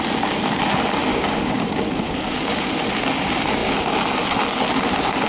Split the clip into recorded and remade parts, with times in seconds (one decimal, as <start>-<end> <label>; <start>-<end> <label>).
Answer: 0.0-1.1 recorded; 1.1-2.7 remade; 2.7-5.3 recorded